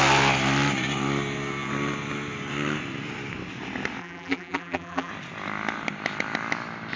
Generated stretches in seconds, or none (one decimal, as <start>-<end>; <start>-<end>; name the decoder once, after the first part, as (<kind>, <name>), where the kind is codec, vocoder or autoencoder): 4.0-5.1 (vocoder, BigVGAN v2)